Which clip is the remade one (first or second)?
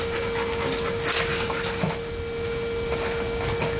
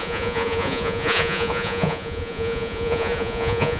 second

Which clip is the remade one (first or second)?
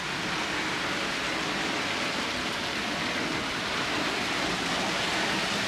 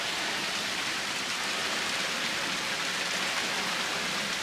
second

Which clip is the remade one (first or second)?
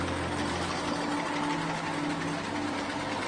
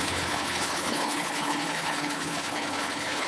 second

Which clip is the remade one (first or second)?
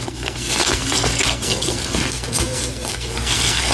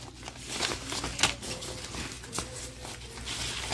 first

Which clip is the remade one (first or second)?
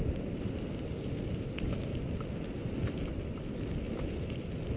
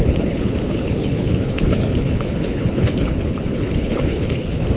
second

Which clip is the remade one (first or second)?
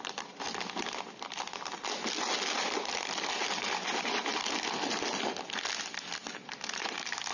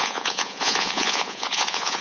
second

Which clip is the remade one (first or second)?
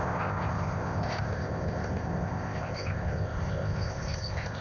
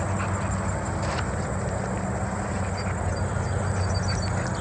first